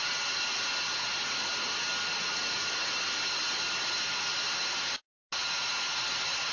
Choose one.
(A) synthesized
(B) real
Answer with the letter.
B